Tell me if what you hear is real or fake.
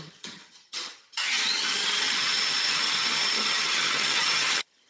fake